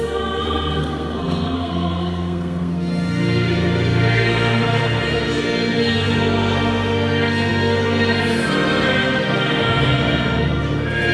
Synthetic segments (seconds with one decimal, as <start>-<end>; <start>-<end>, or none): 0.0-11.1